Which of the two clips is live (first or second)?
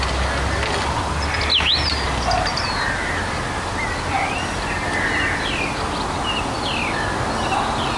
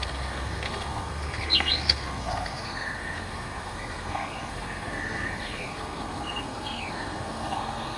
first